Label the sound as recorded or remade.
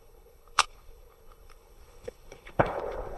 remade